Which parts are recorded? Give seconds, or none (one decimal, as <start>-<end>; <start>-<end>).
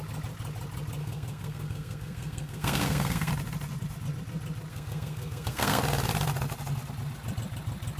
0.0-1.0; 3.3-4.7; 5.8-8.0